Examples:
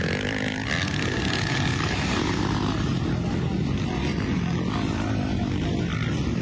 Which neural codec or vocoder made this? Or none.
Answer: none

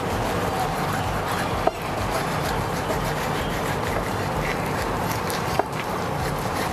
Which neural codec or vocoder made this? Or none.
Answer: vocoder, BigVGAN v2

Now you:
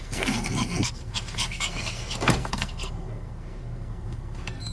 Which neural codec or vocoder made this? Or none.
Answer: codec, SNAC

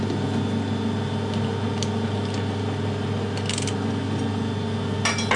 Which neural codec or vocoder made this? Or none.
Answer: none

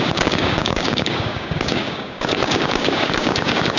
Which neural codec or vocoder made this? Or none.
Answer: codec, DAC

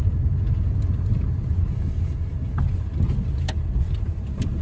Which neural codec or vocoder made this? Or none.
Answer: none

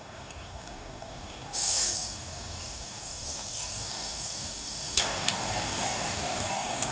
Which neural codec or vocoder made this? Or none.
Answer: codec, DAC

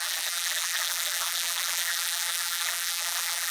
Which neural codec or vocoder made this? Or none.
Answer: vocoder, BigVGAN v2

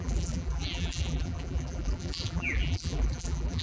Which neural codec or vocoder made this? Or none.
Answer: vocoder, BigVGAN v2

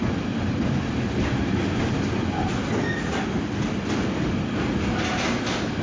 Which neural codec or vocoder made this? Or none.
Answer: none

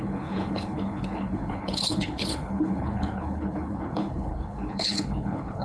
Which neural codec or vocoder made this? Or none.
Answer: codec, HILCodec